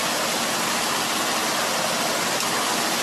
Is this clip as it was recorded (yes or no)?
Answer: yes